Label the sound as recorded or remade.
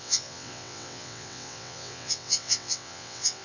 remade